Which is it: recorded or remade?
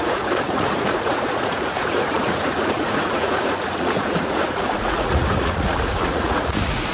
remade